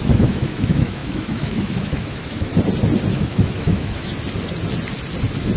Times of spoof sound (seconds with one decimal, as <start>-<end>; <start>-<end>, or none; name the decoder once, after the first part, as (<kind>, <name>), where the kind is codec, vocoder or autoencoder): 0.0-2.5 (autoencoder, DAC-VAE); 3.1-4.1